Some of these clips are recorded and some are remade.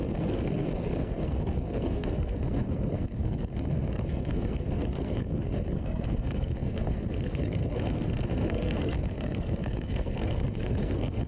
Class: remade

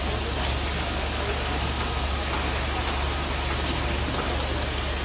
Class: recorded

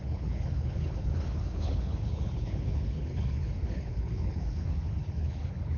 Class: remade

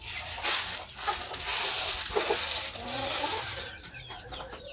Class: recorded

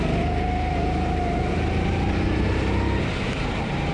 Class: recorded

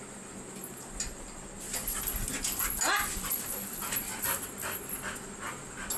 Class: recorded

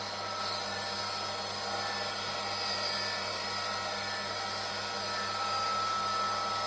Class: recorded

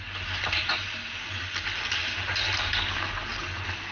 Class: recorded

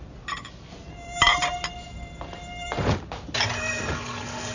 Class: recorded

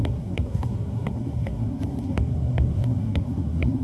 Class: remade